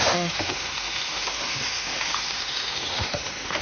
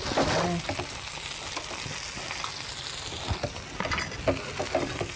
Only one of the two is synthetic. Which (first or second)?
first